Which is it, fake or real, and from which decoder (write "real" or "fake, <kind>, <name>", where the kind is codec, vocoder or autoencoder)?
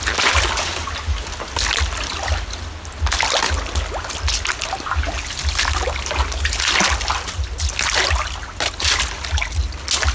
real